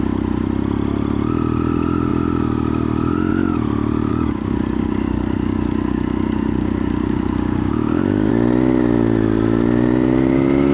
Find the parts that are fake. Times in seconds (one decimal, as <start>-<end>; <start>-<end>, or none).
4.1-8.3